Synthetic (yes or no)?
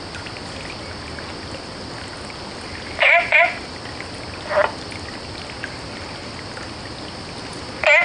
no